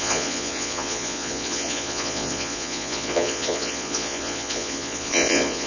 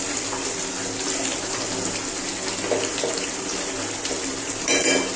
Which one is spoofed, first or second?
first